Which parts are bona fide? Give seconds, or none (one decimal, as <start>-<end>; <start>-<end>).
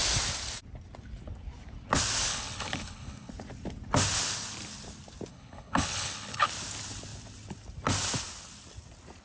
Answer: 0.0-2.3; 3.3-5.3; 6.5-9.2